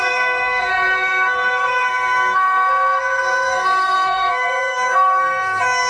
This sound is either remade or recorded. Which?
remade